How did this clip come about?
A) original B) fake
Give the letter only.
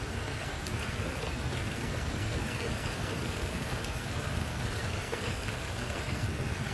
B